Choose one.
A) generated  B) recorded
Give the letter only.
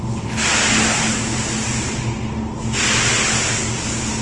B